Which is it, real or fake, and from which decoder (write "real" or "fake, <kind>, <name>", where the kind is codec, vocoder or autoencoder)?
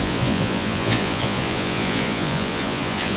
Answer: fake, vocoder, Vocos